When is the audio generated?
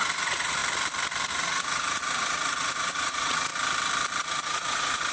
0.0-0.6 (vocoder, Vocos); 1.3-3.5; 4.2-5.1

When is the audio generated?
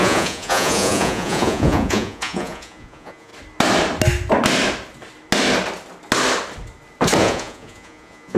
0.0-3.3 (vocoder, Vocos); 7.2-8.4